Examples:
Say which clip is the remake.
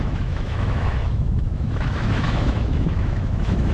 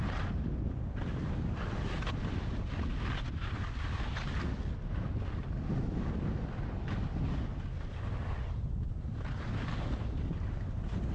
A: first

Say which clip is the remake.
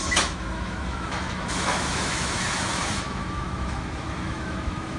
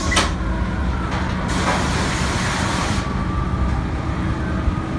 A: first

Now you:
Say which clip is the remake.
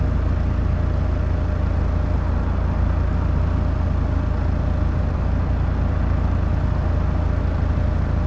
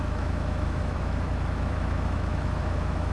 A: second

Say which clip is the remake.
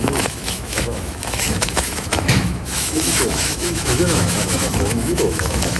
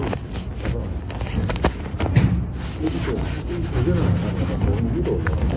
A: first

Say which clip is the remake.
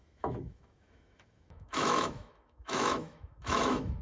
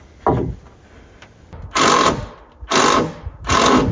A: first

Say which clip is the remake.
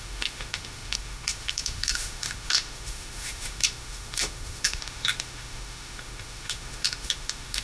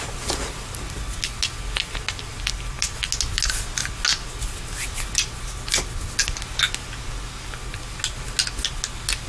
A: first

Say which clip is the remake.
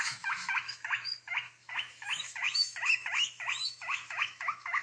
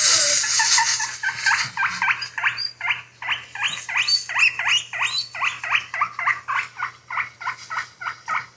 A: first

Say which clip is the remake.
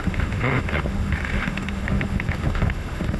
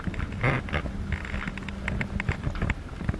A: first